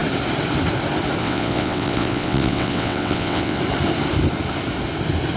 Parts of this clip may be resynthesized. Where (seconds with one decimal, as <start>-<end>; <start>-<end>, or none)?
1.2-3.6